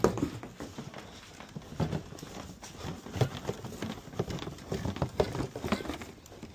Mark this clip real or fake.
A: real